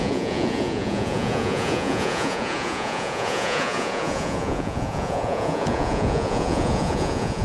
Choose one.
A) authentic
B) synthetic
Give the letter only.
B